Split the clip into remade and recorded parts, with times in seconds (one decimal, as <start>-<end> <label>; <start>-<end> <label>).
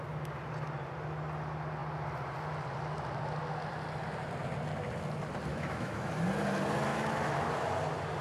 0.0-5.5 recorded; 5.5-6.1 remade; 6.1-6.9 recorded; 6.9-7.5 remade; 7.5-8.2 recorded